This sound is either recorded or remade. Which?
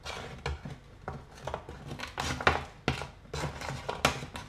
recorded